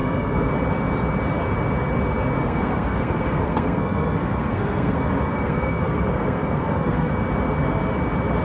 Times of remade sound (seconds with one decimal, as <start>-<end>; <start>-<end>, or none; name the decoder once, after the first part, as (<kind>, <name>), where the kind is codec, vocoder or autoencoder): 0.0-0.5 (codec, SNAC); 2.4-7.1